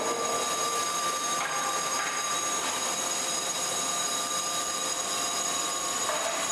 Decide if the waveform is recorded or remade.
recorded